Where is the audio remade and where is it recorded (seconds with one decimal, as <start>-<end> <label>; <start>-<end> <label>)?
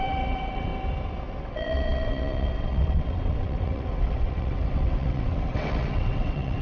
0.0-0.7 remade; 0.7-1.4 recorded; 1.4-6.6 remade